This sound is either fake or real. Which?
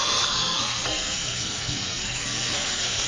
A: fake